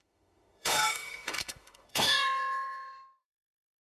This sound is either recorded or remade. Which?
remade